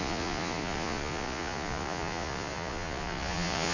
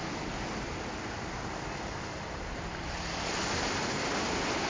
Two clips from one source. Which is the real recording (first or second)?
second